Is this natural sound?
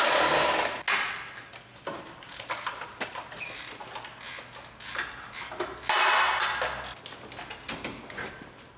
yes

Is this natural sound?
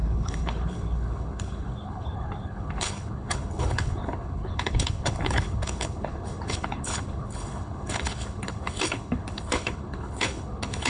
no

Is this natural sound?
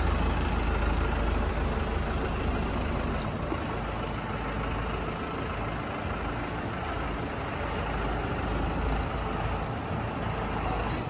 yes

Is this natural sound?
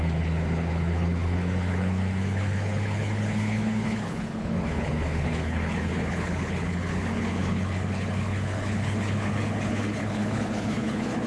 no